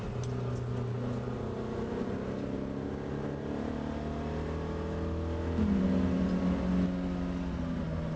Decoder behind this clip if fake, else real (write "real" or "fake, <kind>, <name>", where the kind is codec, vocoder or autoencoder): real